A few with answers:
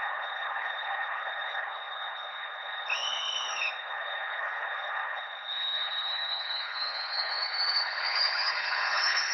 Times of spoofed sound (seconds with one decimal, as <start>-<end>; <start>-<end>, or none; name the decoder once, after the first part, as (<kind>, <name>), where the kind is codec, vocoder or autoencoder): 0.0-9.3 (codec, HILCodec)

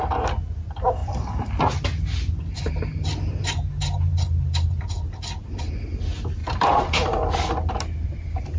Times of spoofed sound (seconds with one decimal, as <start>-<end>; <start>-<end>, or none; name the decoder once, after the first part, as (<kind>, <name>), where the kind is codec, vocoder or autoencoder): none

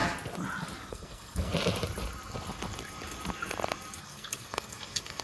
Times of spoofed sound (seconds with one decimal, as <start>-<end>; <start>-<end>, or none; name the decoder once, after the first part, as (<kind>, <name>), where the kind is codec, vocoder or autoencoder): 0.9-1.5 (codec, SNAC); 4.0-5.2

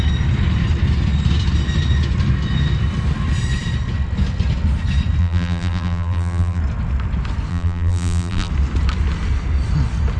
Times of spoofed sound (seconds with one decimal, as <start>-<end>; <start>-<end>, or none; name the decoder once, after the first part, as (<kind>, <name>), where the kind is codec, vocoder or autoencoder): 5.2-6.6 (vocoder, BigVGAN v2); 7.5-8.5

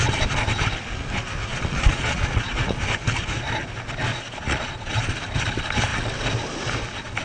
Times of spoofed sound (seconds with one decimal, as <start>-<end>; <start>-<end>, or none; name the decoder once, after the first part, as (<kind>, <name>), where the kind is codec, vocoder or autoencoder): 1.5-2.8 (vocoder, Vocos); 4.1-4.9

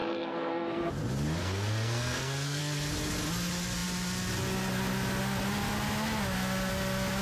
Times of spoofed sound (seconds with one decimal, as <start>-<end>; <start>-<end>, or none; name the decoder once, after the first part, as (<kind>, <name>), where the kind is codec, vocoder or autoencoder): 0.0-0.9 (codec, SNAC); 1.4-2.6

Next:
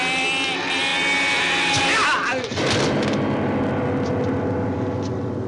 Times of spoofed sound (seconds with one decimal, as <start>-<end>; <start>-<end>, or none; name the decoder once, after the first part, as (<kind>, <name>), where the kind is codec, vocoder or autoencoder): none

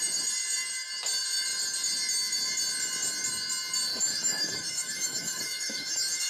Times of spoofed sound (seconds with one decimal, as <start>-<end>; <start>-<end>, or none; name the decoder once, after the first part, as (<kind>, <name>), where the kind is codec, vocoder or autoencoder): 3.9-6.3 (autoencoder, DAC-VAE)